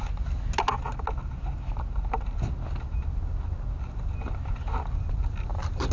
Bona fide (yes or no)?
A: yes